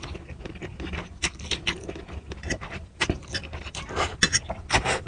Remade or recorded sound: recorded